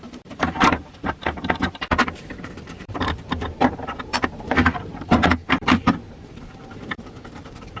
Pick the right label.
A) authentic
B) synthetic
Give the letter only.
B